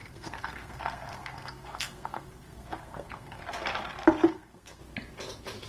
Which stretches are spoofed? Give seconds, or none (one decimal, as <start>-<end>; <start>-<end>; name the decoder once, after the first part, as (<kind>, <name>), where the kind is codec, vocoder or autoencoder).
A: 0.0-3.4 (codec, SNAC); 4.3-4.8